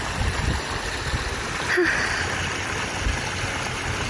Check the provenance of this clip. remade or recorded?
recorded